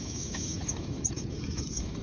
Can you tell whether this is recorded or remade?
remade